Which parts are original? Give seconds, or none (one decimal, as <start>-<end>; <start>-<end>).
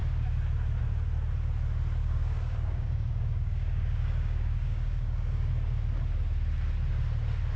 0.0-2.0; 5.5-7.6